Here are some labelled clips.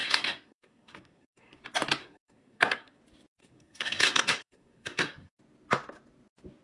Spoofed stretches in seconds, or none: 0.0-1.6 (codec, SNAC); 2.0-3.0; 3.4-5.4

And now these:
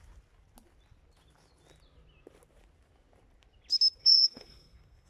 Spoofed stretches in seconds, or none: 4.0-5.1 (codec, SNAC)

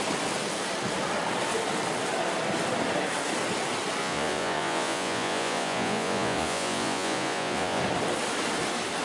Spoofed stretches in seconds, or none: 4.0-7.8 (vocoder, Vocos)

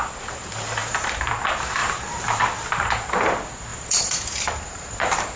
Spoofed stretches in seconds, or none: 0.8-1.3 (vocoder, BigVGAN v2); 3.7-5.4

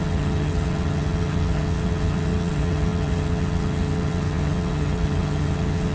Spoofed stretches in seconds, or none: 0.0-5.9 (vocoder, HiFi-GAN)

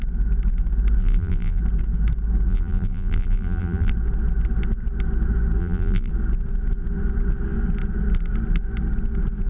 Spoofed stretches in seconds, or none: 1.0-1.6 (vocoder, BigVGAN v2); 2.5-3.9; 5.6-6.1

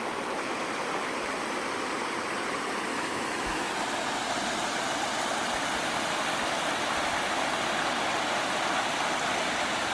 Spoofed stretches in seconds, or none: 2.9-3.7 (autoencoder, DAC-VAE)